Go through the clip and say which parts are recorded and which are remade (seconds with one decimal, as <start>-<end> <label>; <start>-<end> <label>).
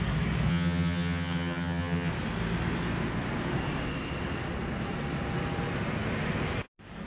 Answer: 0.0-0.5 recorded; 0.5-2.1 remade; 2.1-7.1 recorded